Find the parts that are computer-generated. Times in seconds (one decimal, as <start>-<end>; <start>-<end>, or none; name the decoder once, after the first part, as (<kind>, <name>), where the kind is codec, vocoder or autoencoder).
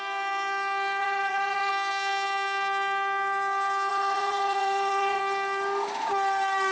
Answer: 1.0-1.7 (vocoder, Vocos); 3.9-5.2